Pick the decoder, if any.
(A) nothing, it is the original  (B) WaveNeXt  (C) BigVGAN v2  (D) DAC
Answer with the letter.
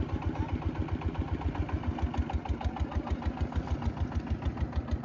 A